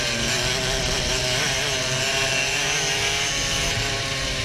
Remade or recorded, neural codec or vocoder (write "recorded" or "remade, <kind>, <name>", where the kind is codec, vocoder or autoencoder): recorded